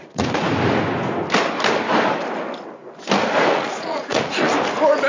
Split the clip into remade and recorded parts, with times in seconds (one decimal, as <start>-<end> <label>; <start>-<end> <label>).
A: 0.0-3.5 recorded; 3.5-4.5 remade; 4.5-5.1 recorded